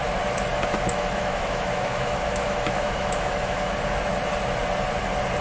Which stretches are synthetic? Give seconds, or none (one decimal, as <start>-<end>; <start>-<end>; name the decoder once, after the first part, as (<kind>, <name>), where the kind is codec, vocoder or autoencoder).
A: 0.5-3.7 (autoencoder, DAC-VAE)